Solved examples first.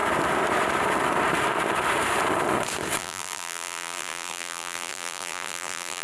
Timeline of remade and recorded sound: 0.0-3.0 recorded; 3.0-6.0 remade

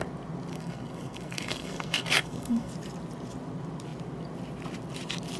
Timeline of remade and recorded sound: 0.0-0.5 recorded; 0.5-2.7 remade; 2.7-5.4 recorded

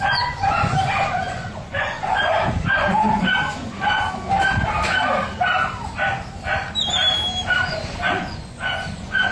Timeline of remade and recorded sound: 0.0-4.0 remade; 4.0-7.7 recorded; 7.7-9.3 remade

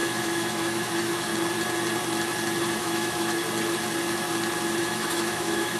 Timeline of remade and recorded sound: 0.0-1.3 remade; 1.3-2.8 recorded; 2.8-3.4 remade; 3.4-4.8 recorded; 4.8-5.8 remade

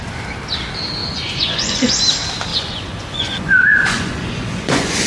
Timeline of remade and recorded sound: 0.0-1.0 recorded; 1.0-2.0 remade; 2.0-2.5 recorded; 2.5-5.1 remade